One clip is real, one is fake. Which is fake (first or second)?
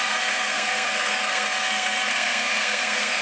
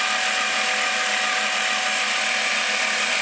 first